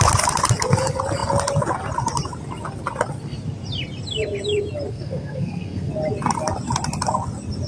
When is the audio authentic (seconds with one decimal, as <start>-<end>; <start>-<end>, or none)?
0.0-4.9; 5.9-7.7